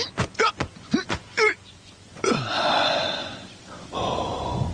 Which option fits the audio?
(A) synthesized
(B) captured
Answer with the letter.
A